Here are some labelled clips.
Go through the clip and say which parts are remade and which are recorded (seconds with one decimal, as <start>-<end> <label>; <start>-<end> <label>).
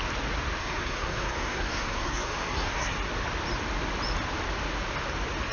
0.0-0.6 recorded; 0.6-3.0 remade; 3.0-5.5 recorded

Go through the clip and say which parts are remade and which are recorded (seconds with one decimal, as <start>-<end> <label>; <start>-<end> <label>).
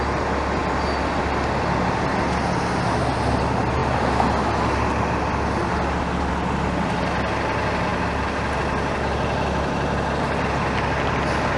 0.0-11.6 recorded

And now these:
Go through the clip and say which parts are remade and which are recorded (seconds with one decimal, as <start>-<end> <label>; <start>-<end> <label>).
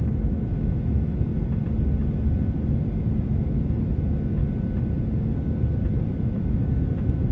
0.0-1.3 remade; 1.3-3.2 recorded; 3.2-4.4 remade; 4.4-6.0 recorded; 6.0-7.3 remade